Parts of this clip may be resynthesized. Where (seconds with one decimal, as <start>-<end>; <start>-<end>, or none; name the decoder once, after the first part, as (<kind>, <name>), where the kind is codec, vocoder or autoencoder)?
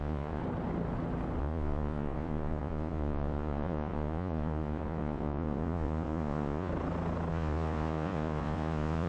0.0-0.4 (vocoder, Vocos); 1.4-6.7; 7.3-9.1